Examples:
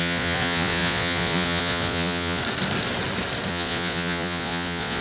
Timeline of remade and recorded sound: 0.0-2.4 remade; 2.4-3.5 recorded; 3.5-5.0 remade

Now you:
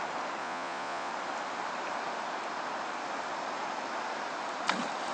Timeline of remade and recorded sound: 0.0-0.4 recorded; 0.4-1.1 remade; 1.1-5.1 recorded